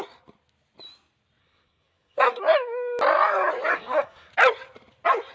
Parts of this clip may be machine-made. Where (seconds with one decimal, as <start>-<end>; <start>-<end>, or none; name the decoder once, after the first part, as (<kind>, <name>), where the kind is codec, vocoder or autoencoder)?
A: 1.4-2.4 (codec, SNAC); 3.7-4.3